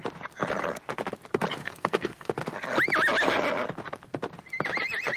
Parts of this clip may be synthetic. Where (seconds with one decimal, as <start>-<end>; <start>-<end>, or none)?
1.6-2.3